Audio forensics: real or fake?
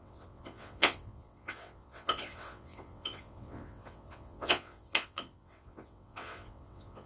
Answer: fake